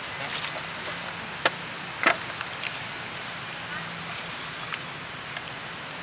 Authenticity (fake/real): real